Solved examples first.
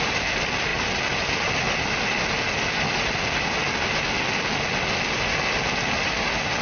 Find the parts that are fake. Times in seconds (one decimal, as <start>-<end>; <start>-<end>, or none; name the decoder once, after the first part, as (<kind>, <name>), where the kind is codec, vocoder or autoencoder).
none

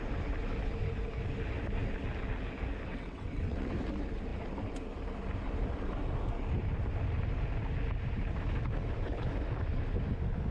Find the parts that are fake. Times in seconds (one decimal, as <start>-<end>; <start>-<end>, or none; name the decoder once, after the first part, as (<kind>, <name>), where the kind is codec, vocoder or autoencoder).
2.9-3.7 (vocoder, WaveNeXt)

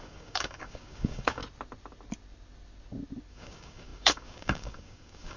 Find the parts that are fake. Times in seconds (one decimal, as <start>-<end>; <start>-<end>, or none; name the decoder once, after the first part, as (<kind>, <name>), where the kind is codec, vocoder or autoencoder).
0.0-1.4 (codec, DAC); 3.3-5.4

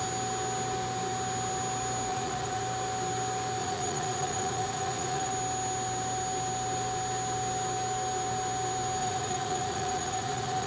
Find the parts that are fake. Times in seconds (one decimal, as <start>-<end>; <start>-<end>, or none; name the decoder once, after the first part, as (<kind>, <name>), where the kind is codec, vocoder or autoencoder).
2.1-2.6 (vocoder, Vocos); 3.6-5.3; 9.0-10.7

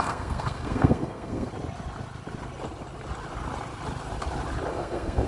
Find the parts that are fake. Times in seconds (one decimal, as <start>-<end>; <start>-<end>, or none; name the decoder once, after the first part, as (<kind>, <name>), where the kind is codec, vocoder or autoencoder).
0.0-1.5 (codec, SNAC); 4.7-5.3

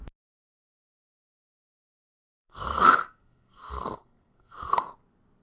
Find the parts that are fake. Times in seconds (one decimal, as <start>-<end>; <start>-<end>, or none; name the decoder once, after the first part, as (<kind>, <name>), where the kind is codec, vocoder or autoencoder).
1.6-4.8 (codec, SNAC)

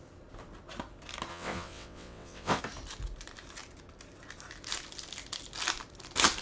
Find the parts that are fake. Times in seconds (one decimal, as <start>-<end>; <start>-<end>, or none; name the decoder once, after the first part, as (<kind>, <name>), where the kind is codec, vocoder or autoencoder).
1.3-2.6 (vocoder, WaveNeXt)

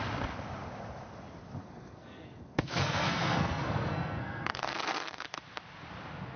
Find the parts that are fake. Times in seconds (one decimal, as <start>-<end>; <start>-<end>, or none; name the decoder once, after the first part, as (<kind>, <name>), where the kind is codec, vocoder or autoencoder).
1.6-5.4 (codec, SNAC)